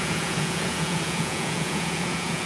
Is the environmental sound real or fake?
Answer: fake